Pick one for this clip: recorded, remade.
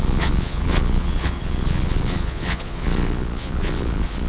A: remade